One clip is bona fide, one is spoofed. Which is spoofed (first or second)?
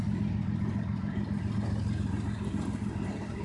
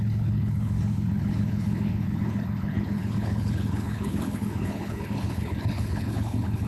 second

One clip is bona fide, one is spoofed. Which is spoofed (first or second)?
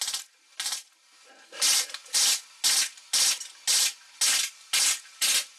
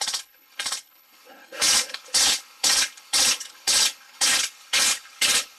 second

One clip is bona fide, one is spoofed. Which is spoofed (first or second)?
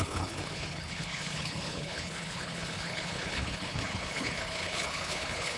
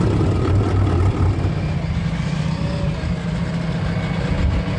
first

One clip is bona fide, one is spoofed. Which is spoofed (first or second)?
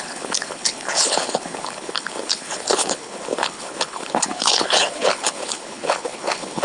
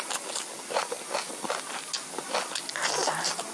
first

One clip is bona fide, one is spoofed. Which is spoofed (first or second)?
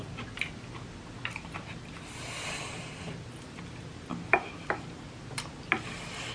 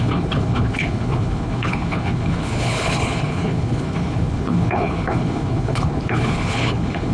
second